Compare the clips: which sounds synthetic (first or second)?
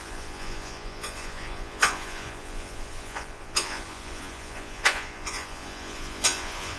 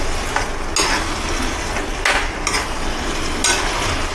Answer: first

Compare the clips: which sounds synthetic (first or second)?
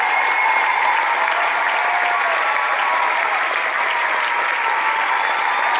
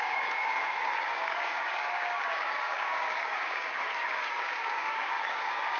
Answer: second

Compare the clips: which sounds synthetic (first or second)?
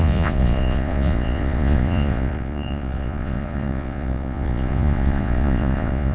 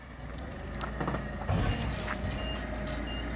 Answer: first